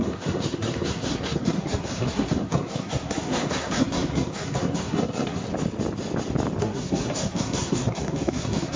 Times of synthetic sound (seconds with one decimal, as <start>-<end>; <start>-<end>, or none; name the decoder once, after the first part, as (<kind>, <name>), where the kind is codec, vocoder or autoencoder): 0.0-5.5 (codec, SNAC); 6.6-8.8